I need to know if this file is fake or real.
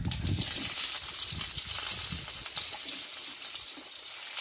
real